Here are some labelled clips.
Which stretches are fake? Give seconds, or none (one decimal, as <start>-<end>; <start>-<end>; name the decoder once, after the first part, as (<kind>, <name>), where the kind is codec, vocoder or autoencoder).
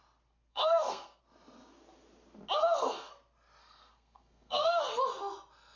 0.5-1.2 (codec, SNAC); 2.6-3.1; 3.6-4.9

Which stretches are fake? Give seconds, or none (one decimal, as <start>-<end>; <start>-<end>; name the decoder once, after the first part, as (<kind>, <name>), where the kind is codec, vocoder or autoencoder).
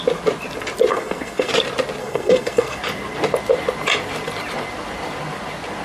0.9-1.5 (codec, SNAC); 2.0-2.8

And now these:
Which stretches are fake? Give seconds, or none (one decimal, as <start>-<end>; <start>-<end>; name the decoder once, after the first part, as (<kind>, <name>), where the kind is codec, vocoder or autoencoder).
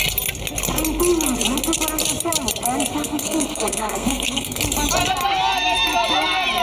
2.9-4.6 (codec, SNAC)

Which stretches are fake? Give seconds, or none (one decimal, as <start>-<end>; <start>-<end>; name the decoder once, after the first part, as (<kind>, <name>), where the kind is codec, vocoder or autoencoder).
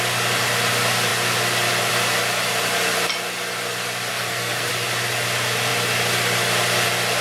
4.1-4.7 (codec, SNAC)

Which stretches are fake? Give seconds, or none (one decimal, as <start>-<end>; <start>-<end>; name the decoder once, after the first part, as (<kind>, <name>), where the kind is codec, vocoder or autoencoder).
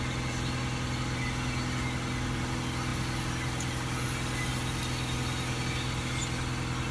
none